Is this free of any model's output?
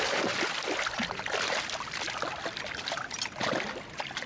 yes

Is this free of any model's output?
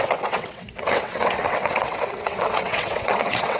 no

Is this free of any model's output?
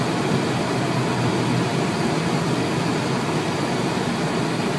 yes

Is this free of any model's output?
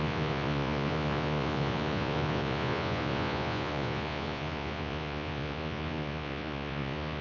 no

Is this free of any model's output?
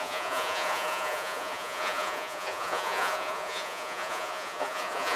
no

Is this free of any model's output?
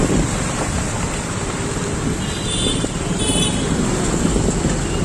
yes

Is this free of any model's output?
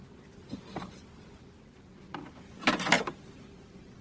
yes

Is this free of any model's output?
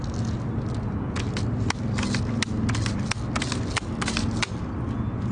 yes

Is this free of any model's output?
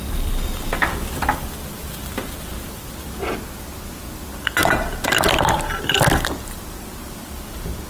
yes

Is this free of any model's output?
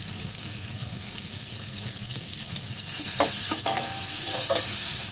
no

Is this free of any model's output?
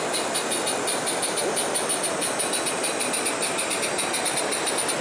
yes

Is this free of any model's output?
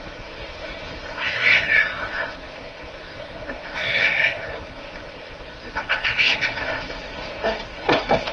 no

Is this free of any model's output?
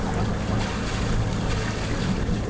yes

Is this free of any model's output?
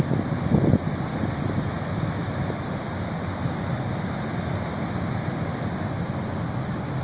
yes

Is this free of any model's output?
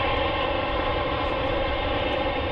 yes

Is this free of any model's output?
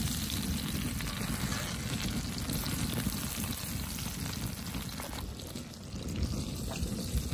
yes